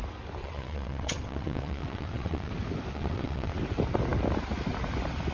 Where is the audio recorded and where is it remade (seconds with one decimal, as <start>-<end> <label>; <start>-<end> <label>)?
0.0-0.4 recorded; 0.4-2.5 remade; 2.5-2.9 recorded; 2.9-3.5 remade; 3.5-5.3 recorded